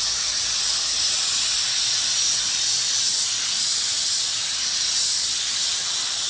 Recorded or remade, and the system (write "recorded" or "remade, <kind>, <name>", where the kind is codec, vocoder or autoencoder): recorded